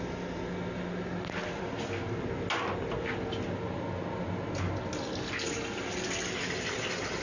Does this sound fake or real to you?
real